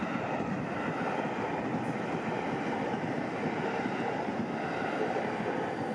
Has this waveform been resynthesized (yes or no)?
no